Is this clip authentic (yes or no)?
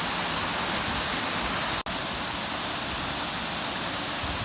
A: yes